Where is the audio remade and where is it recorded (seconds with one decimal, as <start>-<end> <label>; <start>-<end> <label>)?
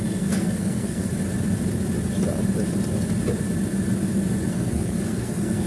0.0-1.1 remade; 1.1-4.5 recorded; 4.5-5.7 remade